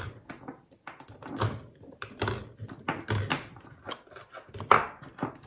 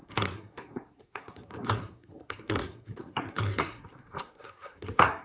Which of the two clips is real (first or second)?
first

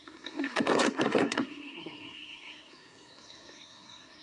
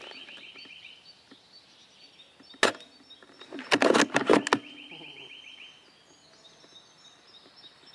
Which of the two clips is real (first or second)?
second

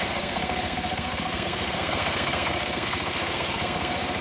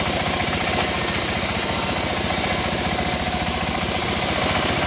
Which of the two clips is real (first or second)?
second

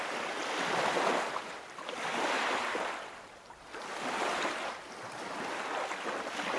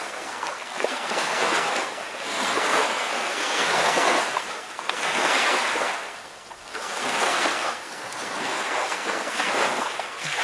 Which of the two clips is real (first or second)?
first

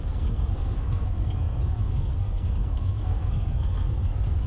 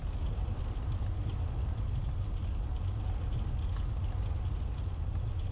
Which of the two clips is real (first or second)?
second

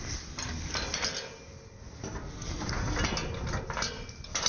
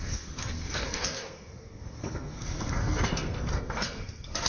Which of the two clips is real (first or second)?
first